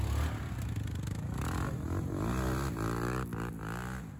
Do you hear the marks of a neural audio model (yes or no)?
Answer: no